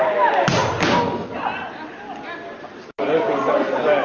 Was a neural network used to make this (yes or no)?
no